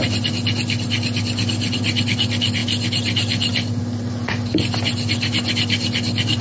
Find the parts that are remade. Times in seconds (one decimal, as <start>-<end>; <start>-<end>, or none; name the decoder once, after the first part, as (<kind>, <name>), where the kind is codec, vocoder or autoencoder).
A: none

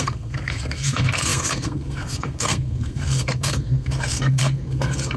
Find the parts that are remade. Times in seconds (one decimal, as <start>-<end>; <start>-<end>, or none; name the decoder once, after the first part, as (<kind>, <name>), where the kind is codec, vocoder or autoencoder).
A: 0.0-5.2 (codec, SNAC)

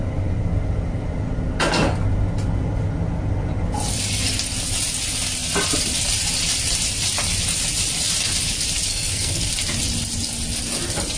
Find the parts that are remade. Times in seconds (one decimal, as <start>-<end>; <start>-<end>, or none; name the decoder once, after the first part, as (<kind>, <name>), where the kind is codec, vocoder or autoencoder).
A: 8.9-9.5 (codec, SNAC)

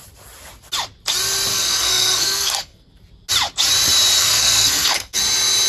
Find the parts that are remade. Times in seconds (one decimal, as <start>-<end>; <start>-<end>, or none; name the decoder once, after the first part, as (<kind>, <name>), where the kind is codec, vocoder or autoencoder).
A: 1.5-2.9 (codec, SNAC); 4.2-5.2